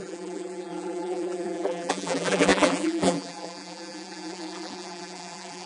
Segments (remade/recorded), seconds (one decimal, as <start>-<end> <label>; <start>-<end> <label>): 0.0-5.7 remade